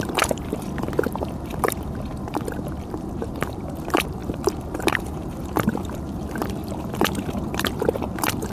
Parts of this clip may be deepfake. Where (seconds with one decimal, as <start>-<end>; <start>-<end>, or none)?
0.0-8.5